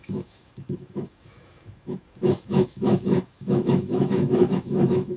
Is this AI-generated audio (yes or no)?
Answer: yes